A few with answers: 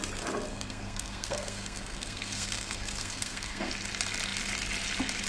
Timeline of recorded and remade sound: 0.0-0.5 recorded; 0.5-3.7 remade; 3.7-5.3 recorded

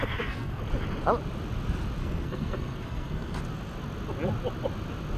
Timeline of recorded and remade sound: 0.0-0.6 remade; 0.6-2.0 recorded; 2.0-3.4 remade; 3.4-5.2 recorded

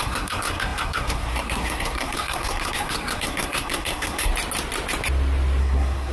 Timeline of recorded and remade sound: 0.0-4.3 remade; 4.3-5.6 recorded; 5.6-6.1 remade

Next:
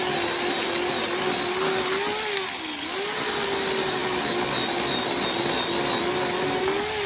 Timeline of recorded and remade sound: 0.0-7.1 recorded

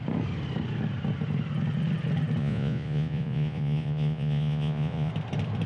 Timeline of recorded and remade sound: 0.0-2.4 recorded; 2.4-5.1 remade; 5.1-5.7 recorded

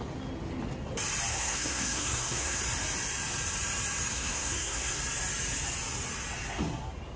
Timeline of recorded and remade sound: 0.0-1.3 recorded; 1.3-2.6 remade; 2.6-4.1 recorded; 4.1-5.0 remade; 5.0-7.2 recorded

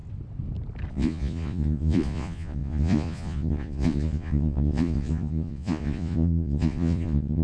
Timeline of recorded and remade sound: 0.0-0.9 recorded; 0.9-7.4 remade